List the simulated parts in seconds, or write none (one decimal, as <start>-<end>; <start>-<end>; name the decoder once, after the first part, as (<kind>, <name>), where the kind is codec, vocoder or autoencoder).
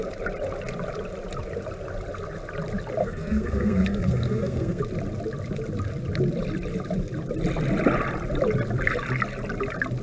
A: 3.0-4.8 (codec, SNAC)